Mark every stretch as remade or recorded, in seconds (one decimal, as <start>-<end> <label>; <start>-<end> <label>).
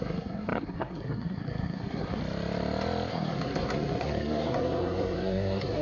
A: 0.0-2.2 remade; 2.2-3.1 recorded; 3.1-5.8 remade